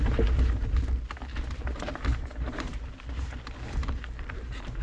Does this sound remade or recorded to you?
remade